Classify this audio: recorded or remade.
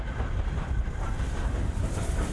recorded